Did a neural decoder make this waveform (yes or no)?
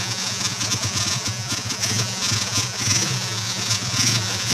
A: yes